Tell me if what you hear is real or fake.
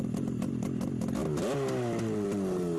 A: real